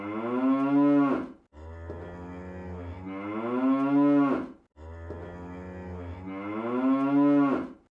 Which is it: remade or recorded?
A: recorded